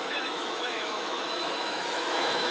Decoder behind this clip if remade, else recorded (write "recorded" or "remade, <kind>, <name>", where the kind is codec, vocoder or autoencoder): remade, autoencoder, DAC-VAE